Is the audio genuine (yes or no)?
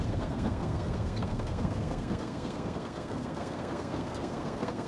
no